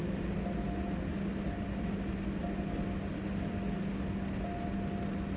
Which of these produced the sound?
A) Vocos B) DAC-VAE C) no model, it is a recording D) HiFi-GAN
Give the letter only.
C